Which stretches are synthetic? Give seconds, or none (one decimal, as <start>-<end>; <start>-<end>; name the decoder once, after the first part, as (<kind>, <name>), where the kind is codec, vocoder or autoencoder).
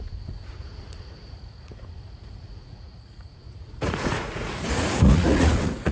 0.0-5.9 (vocoder, Vocos)